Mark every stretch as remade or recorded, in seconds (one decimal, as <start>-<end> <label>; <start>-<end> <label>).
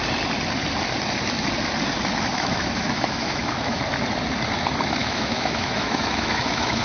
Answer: 0.0-2.3 recorded; 2.3-3.8 remade; 3.8-5.0 recorded; 5.0-6.8 remade